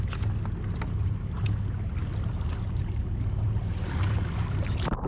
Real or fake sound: real